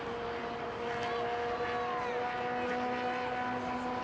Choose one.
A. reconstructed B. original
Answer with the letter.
B